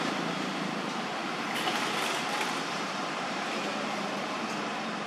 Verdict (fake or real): fake